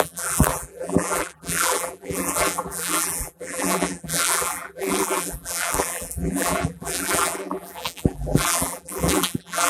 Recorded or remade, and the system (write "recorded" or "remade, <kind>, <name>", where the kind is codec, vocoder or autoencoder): remade, vocoder, BigVGAN v2